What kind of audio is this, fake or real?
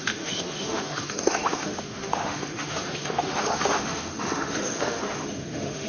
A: fake